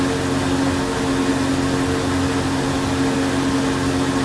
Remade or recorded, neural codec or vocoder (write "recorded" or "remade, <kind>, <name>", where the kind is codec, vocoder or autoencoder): recorded